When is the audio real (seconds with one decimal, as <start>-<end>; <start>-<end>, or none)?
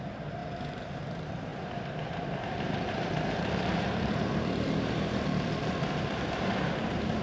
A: none